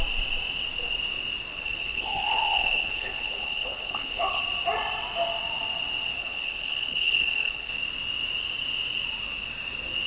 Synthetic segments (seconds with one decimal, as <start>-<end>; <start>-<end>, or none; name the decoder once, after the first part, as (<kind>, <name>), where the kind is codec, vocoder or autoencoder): 1.5-4.4 (codec, HILCodec); 6.2-7.7